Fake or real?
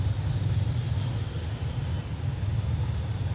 real